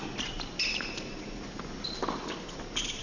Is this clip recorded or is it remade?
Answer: recorded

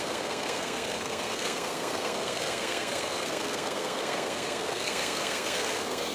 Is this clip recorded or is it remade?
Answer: remade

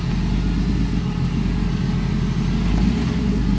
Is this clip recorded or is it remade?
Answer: recorded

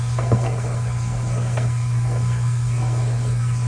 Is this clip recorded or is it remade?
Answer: remade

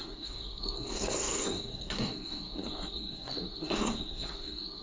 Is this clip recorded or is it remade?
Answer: remade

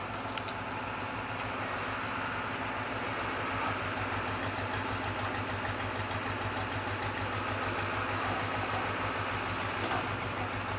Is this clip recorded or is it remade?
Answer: recorded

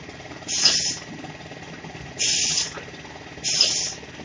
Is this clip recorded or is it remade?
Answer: recorded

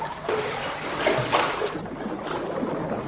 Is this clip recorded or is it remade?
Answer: recorded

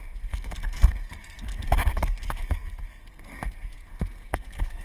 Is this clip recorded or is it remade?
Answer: remade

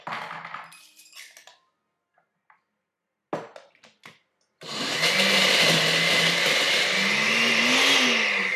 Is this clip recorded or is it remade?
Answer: recorded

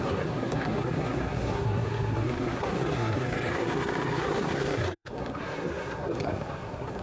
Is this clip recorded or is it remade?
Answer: remade